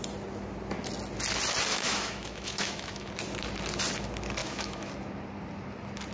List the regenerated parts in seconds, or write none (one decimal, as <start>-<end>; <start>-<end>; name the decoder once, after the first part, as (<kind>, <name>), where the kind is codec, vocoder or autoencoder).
1.7-3.1 (autoencoder, DAC-VAE); 4.4-4.9